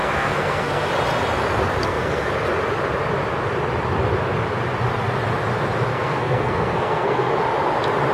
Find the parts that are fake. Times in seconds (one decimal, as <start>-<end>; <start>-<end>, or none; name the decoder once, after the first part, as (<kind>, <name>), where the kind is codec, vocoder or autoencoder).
0.0-0.9 (codec, SNAC); 1.8-2.3; 5.9-7.3